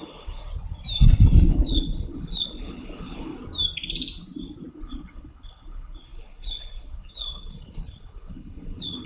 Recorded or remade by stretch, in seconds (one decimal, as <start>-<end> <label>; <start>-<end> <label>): 0.0-0.4 remade; 0.4-1.5 recorded; 1.5-3.3 remade; 3.3-4.7 recorded; 4.7-9.1 remade